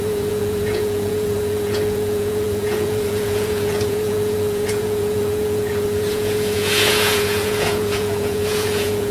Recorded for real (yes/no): no